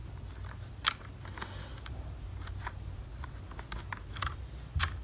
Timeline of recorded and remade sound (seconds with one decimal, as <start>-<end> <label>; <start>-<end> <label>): 0.0-1.0 remade; 1.0-1.7 recorded; 1.7-3.4 remade; 3.4-5.0 recorded